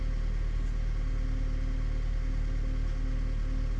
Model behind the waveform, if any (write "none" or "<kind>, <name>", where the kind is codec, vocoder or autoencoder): none